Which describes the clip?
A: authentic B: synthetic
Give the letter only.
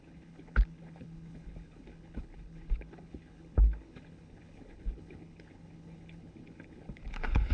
B